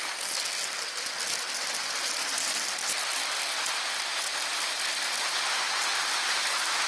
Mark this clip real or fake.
real